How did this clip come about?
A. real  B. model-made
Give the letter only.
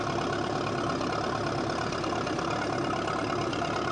A